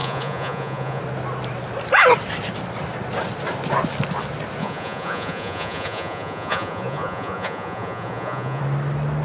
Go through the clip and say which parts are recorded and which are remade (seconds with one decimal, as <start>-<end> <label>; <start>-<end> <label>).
0.0-1.0 remade; 1.0-4.6 recorded; 4.6-8.6 remade; 8.6-9.2 recorded